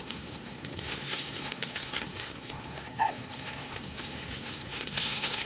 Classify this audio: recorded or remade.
remade